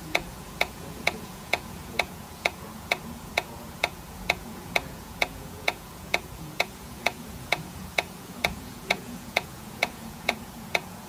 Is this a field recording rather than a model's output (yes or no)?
no